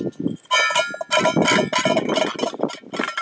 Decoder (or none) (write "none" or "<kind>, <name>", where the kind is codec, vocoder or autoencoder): none